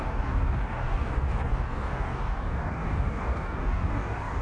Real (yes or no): no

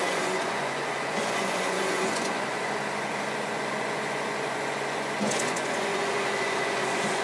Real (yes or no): no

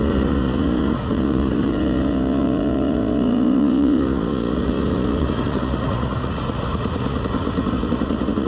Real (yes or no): no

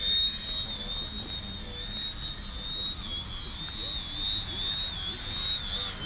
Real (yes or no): yes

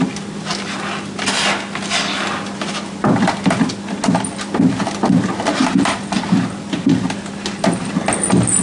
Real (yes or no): yes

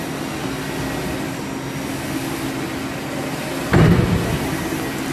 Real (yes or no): yes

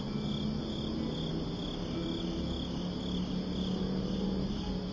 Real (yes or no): yes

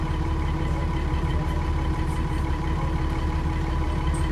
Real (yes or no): no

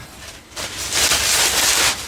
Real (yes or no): yes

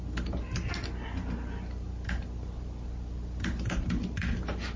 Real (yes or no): yes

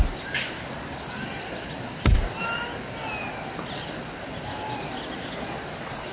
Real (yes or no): yes